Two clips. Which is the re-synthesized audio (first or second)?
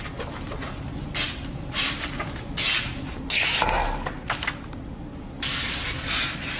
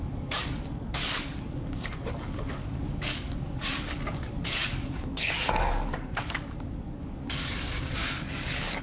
second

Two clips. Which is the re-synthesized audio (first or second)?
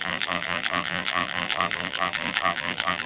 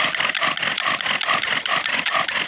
first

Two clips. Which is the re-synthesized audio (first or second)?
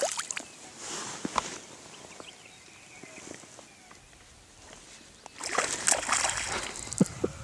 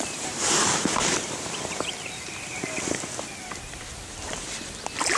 second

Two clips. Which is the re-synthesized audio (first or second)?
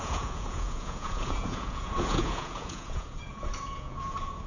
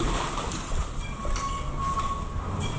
first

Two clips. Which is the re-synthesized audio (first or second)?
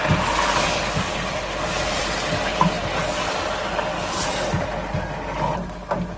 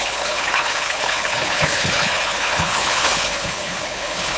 second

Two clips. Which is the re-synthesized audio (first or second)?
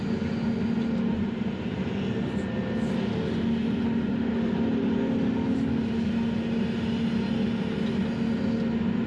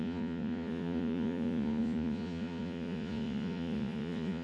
second